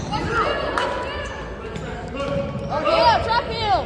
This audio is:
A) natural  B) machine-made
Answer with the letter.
A